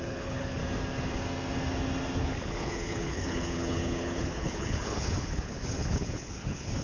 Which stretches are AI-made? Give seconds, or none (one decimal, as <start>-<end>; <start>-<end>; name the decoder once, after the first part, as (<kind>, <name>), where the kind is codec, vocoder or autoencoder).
0.0-0.6 (codec, HILCodec); 2.2-6.8